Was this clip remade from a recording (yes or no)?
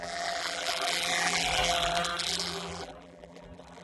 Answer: yes